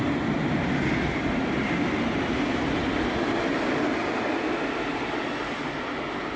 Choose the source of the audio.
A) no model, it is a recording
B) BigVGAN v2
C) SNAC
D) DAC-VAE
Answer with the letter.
A